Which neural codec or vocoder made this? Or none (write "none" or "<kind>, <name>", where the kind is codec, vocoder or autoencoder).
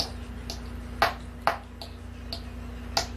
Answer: none